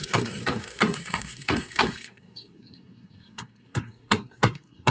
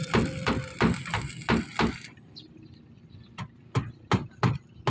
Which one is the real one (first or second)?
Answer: second